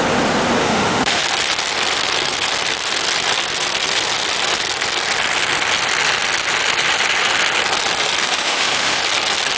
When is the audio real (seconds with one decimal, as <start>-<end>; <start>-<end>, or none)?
0.0-0.6; 1.2-8.2; 9.0-9.6